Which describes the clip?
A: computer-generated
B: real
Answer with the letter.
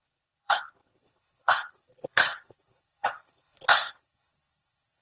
A